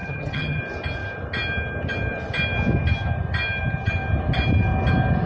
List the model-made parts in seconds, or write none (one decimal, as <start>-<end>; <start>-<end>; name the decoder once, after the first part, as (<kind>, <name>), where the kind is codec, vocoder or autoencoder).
0.0-0.6 (vocoder, HiFi-GAN)